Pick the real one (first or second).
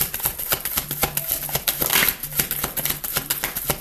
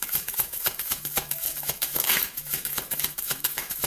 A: first